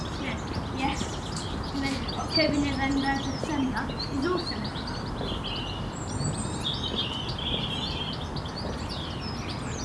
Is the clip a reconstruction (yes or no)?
no